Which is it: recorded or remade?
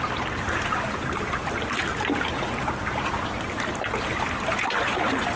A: recorded